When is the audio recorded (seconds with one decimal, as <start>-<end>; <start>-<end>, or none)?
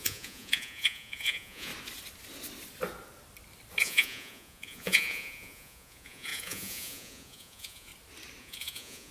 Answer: 1.7-3.8; 7.9-8.4